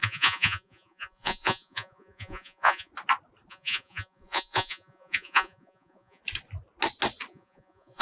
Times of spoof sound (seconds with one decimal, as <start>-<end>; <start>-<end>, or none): 0.0-2.9; 3.5-6.2; 7.3-8.0